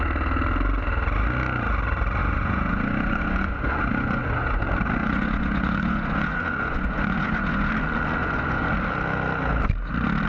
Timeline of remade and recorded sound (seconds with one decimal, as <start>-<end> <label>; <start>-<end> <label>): 0.0-2.2 recorded; 2.2-4.6 remade; 4.6-5.0 recorded; 5.0-7.7 remade; 7.7-8.2 recorded; 8.2-8.7 remade; 8.7-10.3 recorded